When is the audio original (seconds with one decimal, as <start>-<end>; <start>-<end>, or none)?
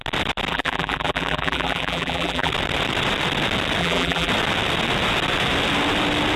0.0-0.5; 2.5-3.8; 4.3-6.4